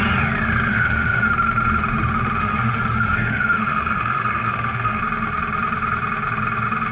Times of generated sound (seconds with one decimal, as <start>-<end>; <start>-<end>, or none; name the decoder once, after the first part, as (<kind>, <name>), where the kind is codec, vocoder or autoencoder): 0.7-1.3 (autoencoder, DAC-VAE); 2.4-5.0